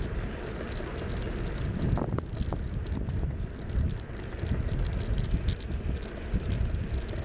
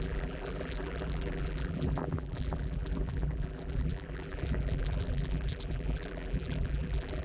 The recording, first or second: first